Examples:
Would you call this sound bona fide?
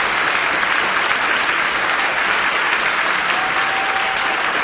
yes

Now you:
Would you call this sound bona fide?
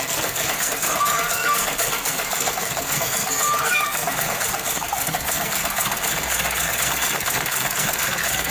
no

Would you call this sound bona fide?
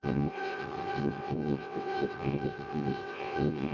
no